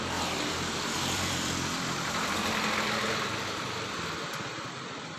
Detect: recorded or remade remade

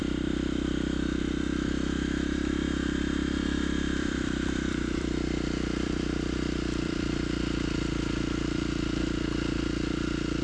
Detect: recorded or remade remade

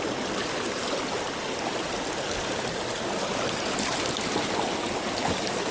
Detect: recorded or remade recorded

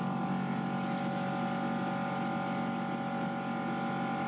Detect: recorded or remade recorded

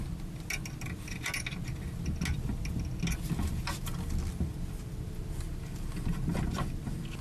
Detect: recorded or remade recorded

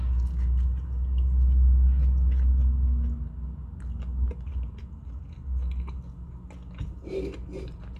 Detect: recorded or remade recorded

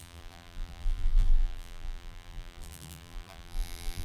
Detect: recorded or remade remade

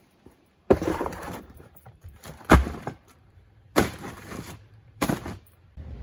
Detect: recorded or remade remade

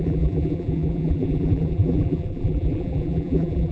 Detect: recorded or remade remade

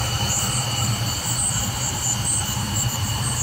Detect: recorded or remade remade